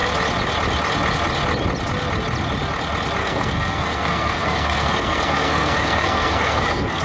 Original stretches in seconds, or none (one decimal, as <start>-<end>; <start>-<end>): 0.0-3.2